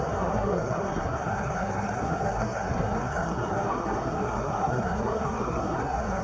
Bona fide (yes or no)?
no